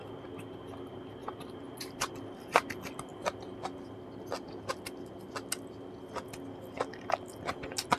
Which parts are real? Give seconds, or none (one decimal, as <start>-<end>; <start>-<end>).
0.0-1.2; 2.1-8.0